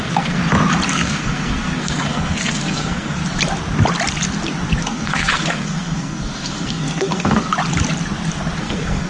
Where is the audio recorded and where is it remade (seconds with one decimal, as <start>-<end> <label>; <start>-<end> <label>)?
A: 0.0-0.4 remade; 0.4-0.9 recorded; 0.9-3.2 remade; 3.2-4.8 recorded; 4.8-7.5 remade; 7.5-8.6 recorded; 8.6-9.1 remade